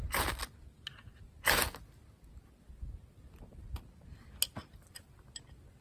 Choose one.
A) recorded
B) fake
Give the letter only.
A